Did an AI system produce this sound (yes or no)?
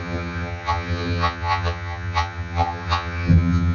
yes